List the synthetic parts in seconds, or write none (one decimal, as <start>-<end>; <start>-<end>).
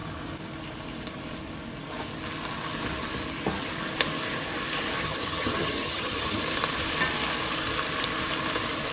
5.0-6.4